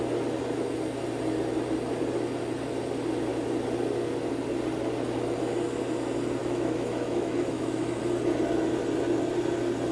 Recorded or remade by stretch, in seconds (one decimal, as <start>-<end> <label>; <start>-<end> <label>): 0.0-6.4 recorded; 6.4-8.0 remade; 8.0-9.9 recorded